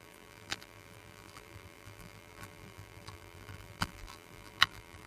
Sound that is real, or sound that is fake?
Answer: fake